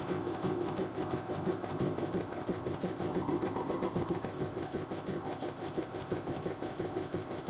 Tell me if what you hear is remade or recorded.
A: remade